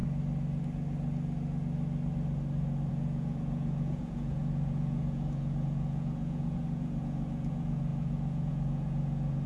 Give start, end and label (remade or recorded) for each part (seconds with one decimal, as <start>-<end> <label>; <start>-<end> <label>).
0.0-2.9 recorded; 2.9-9.5 remade